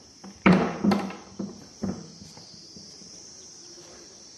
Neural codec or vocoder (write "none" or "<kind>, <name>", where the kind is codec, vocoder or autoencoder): vocoder, BigVGAN v2